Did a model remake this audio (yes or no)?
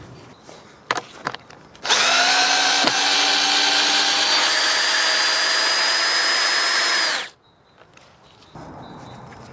no